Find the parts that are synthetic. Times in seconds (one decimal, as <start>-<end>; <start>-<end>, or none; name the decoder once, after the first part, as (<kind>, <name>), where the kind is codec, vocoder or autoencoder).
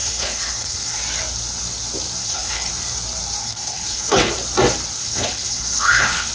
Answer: 0.0-1.0 (codec, HILCodec); 2.2-2.7; 3.4-4.3; 5.0-6.3